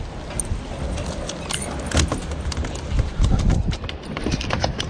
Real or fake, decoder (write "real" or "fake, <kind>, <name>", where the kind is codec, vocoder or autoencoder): real